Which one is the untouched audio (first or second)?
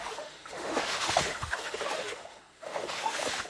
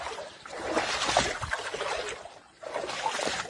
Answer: second